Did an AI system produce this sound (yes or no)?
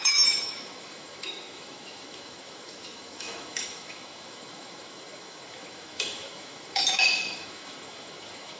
yes